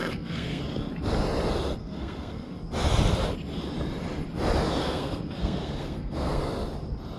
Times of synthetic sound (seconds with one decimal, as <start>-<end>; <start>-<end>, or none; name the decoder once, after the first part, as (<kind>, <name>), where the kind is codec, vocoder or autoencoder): 0.0-0.6 (codec, SNAC); 1.8-2.5; 4.8-6.4